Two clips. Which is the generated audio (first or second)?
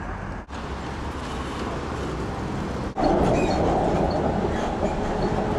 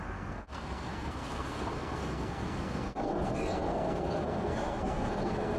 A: second